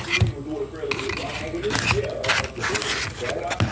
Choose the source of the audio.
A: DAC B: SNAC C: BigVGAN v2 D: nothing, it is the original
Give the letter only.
D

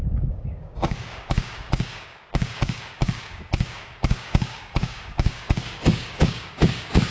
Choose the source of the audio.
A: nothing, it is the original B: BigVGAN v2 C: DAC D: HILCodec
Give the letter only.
C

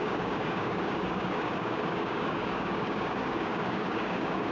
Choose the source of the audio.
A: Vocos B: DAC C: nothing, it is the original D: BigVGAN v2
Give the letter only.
B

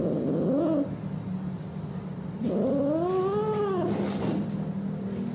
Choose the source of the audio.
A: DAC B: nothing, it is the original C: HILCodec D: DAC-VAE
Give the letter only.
B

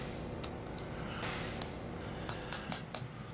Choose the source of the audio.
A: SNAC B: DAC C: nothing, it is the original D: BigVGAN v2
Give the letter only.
C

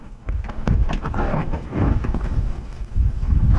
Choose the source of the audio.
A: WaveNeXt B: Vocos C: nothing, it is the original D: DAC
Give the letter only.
D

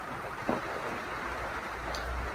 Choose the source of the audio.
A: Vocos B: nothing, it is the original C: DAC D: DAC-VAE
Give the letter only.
B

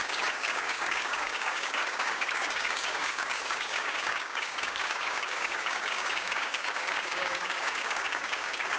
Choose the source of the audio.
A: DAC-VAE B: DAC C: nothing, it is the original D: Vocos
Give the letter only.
B